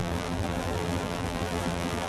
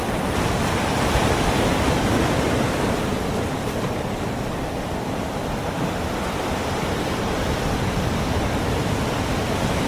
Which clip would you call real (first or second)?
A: second